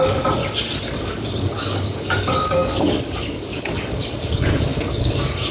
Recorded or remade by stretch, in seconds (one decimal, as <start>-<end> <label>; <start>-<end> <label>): 0.0-0.4 remade; 0.4-1.0 recorded; 1.0-5.5 remade